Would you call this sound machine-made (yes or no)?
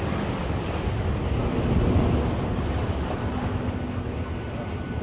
no